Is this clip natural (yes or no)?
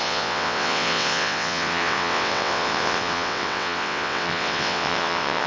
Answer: no